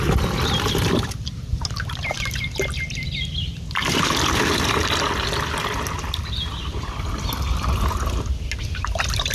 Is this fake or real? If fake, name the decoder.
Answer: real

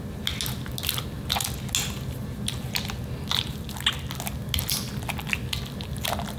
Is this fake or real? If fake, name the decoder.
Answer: real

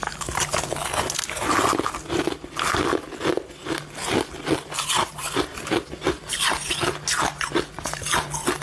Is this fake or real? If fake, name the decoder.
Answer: real